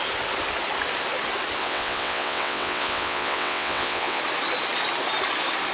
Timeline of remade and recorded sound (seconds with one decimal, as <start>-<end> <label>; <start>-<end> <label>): 0.0-1.6 recorded; 1.6-4.2 remade; 4.2-5.7 recorded